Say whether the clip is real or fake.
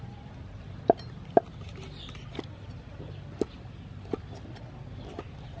real